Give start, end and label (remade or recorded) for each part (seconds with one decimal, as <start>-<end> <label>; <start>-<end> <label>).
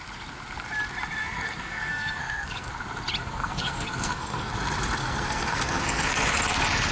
0.0-1.2 recorded; 1.2-2.7 remade; 2.7-3.2 recorded; 3.2-4.5 remade; 4.5-5.0 recorded; 5.0-6.1 remade; 6.1-6.9 recorded